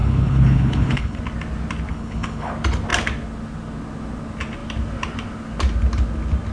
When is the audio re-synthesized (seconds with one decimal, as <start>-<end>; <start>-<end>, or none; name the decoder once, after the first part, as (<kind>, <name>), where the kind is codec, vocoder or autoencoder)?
0.0-1.2 (codec, HILCodec); 1.9-2.5